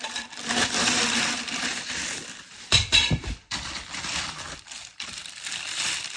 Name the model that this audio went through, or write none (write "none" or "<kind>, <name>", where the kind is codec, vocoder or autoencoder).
vocoder, BigVGAN v2